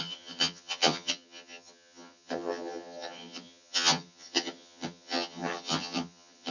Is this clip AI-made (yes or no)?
yes